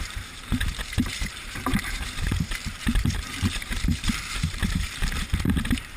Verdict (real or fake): fake